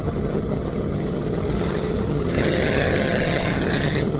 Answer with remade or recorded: remade